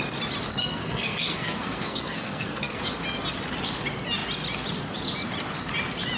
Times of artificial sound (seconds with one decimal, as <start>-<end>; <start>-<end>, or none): 0.6-2.8